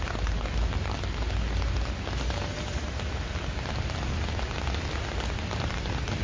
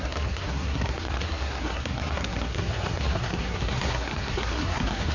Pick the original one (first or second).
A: first